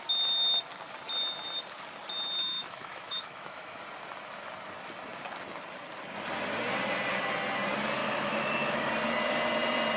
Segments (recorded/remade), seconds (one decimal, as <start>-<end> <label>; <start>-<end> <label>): 0.0-2.4 recorded; 2.4-3.8 remade; 3.8-8.0 recorded; 8.0-8.9 remade; 8.9-10.0 recorded